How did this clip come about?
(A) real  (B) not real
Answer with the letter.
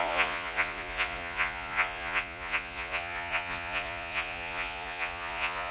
B